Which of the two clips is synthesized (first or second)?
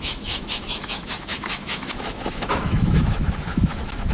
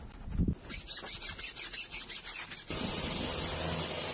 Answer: first